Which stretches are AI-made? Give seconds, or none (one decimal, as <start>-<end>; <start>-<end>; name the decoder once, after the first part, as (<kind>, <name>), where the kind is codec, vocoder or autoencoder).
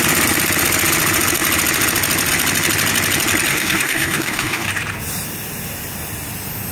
3.5-4.7 (codec, DAC)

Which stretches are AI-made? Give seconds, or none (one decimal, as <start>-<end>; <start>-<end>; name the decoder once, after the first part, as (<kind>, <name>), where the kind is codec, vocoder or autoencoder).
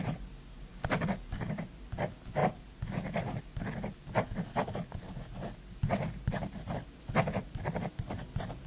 0.7-1.6 (codec, DAC)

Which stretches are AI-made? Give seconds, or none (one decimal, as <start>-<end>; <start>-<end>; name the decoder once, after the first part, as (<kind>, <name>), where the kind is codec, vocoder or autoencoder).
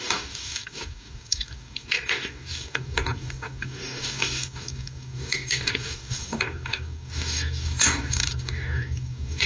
0.0-9.5 (codec, DAC)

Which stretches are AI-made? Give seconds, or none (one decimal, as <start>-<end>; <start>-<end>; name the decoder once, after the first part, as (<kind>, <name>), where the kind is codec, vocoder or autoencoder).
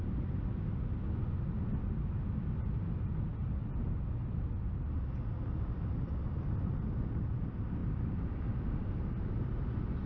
none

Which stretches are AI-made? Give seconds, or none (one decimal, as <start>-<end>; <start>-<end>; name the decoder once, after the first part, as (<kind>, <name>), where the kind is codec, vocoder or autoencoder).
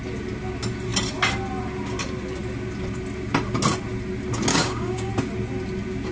4.5-5.1 (codec, DAC)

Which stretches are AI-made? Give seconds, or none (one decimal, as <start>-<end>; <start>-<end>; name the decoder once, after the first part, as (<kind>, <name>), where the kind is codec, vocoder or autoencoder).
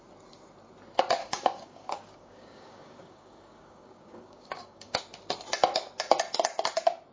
1.2-5.0 (codec, DAC)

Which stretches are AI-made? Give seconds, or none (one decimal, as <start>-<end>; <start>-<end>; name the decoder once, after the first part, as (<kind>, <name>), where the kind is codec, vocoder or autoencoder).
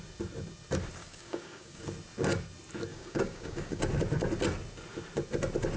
1.0-1.8 (codec, DAC); 2.9-3.8